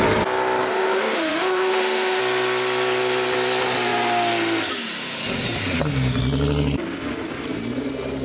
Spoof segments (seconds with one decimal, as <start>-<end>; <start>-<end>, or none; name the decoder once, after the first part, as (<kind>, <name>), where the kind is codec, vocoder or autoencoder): 0.7-2.2 (autoencoder, DAC-VAE)